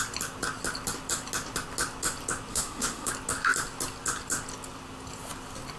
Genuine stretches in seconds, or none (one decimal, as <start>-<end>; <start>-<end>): 0.0-2.5; 3.1-5.8